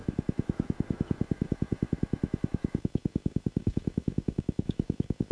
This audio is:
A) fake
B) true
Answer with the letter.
A